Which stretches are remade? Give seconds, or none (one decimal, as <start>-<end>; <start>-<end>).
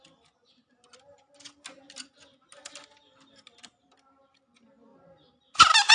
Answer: none